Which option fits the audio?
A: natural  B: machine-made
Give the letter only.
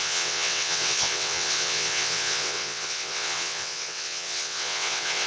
B